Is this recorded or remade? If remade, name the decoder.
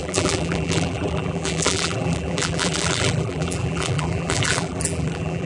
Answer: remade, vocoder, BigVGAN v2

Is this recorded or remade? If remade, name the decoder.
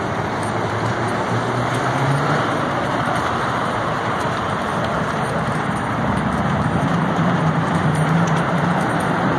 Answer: remade, vocoder, BigVGAN v2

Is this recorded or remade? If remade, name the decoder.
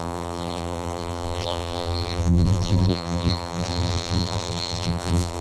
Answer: remade, vocoder, BigVGAN v2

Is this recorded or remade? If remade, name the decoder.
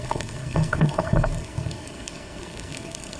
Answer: remade, codec, SNAC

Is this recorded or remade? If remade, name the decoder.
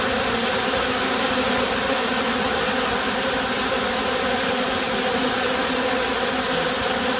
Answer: recorded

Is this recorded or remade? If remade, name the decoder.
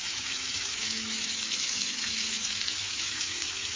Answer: remade, autoencoder, DAC-VAE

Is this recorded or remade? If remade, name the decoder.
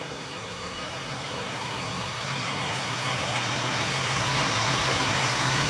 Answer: remade, codec, SNAC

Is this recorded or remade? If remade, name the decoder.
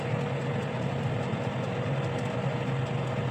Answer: recorded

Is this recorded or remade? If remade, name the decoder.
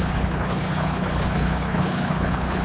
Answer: remade, codec, HILCodec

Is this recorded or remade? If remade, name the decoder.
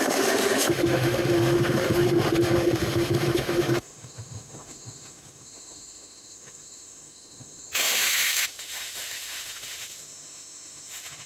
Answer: remade, autoencoder, DAC-VAE